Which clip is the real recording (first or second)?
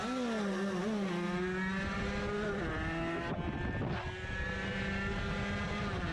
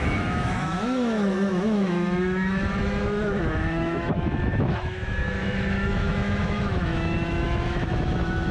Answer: first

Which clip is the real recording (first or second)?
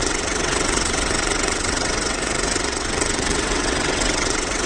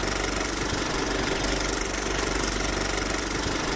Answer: second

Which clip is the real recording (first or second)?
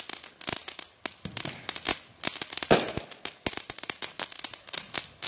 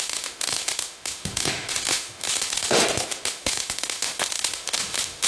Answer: first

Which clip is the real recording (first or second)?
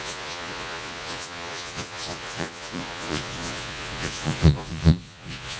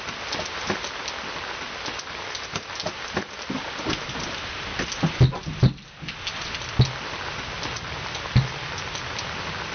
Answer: second